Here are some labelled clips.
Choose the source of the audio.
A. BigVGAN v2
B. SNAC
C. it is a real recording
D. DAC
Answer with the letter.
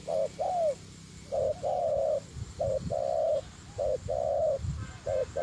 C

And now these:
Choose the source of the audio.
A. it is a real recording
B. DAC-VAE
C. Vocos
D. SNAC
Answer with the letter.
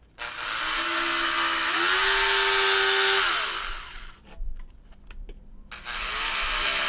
A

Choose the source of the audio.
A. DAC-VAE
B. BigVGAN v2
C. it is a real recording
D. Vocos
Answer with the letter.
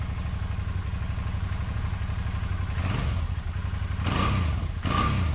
C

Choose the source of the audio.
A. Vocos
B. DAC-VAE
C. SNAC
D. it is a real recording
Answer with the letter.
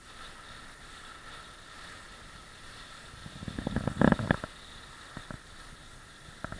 D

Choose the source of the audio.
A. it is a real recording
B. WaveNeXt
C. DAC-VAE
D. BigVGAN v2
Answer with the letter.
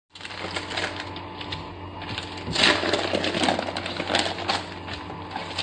A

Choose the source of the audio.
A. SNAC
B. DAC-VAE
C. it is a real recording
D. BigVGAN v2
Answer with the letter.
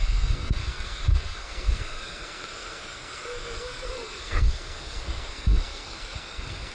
A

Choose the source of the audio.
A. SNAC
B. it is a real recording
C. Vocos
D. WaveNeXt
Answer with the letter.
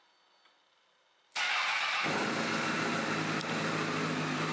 B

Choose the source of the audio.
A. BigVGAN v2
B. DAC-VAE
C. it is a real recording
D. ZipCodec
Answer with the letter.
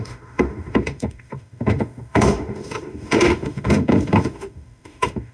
B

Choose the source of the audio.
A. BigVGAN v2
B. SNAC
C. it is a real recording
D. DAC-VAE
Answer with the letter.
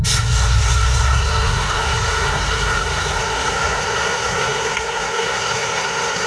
B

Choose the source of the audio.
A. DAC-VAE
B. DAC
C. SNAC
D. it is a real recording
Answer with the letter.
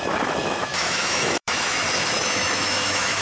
A